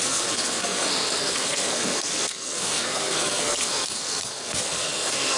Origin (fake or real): fake